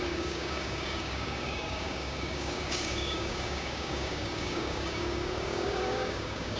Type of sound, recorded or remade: remade